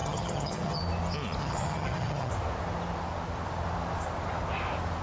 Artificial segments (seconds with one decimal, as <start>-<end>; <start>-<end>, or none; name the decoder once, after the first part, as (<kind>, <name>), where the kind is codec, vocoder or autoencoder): 0.0-0.8 (vocoder, HiFi-GAN); 1.4-2.3

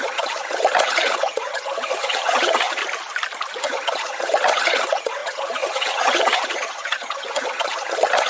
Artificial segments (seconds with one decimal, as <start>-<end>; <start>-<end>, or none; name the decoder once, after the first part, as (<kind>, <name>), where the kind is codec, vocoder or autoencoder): 0.0-2.8 (vocoder, HiFi-GAN); 3.6-8.3

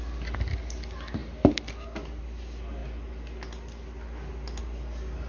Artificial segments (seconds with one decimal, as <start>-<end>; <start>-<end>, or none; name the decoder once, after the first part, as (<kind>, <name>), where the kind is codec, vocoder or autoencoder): none